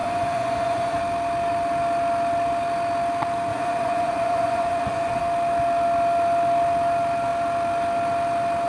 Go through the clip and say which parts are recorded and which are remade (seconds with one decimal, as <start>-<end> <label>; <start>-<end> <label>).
0.0-1.0 remade; 1.0-3.5 recorded; 3.5-5.2 remade; 5.2-8.7 recorded